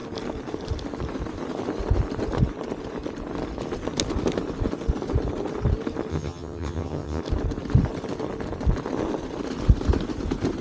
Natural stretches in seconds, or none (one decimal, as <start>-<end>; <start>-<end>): 0.0-6.1; 7.2-10.6